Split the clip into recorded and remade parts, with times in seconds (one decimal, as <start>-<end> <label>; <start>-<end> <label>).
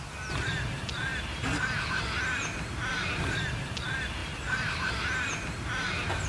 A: 0.0-4.2 recorded; 4.2-4.9 remade; 4.9-6.3 recorded